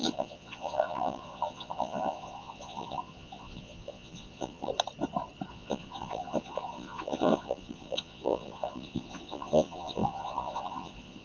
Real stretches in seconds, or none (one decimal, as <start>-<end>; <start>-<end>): 4.7-5.5